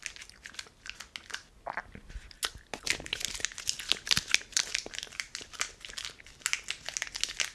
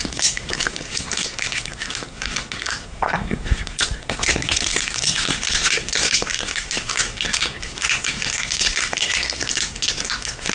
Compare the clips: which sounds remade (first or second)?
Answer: second